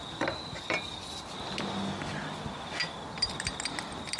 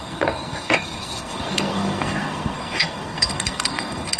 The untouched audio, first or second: first